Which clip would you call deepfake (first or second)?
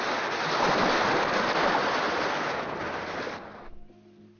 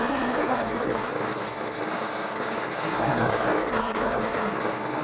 second